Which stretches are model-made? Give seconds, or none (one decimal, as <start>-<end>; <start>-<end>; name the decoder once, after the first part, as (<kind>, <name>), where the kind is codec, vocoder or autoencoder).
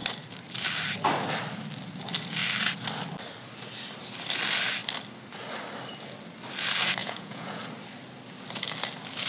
7.0-7.6 (vocoder, Vocos)